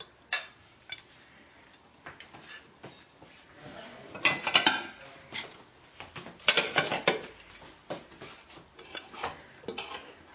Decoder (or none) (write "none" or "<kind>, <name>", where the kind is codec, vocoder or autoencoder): none